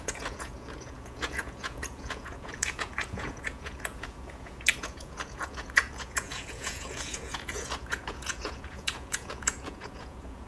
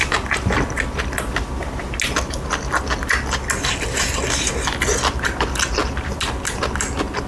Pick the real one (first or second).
second